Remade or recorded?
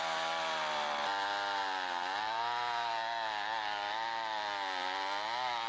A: recorded